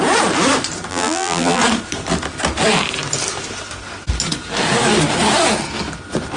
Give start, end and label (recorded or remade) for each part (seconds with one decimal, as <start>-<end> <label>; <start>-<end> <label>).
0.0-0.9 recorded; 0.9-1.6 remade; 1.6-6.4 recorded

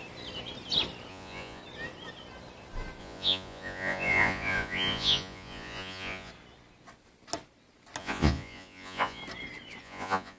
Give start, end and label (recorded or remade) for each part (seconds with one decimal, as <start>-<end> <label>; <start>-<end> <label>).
0.0-1.1 recorded; 1.1-1.6 remade; 1.6-3.0 recorded; 3.0-6.3 remade; 6.3-8.0 recorded; 8.0-9.2 remade; 9.2-9.8 recorded; 9.8-10.4 remade

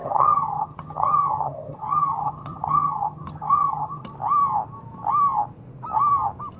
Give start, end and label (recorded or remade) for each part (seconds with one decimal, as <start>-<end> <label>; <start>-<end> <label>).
0.0-4.0 remade; 4.0-6.6 recorded